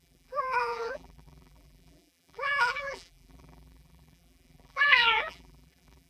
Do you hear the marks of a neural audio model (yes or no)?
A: yes